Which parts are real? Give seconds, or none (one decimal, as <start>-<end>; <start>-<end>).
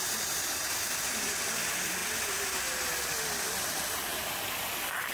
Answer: 0.0-5.1